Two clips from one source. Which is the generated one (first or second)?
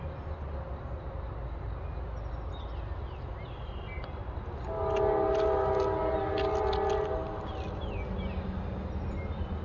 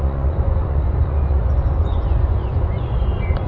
second